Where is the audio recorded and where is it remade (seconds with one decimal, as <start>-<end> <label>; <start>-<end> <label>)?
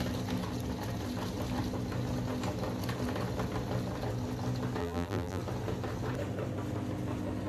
0.0-4.8 recorded; 4.8-5.4 remade; 5.4-7.5 recorded